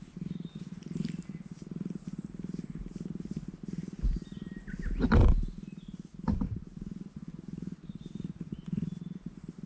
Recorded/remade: recorded